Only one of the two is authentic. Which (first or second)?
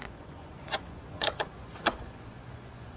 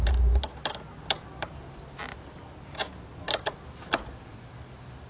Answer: second